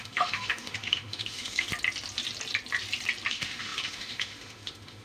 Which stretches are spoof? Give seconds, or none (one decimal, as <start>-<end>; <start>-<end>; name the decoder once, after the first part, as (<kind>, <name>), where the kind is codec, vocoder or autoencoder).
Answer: 0.0-1.7 (autoencoder, DAC-VAE); 3.3-5.0